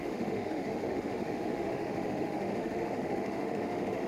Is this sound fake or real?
fake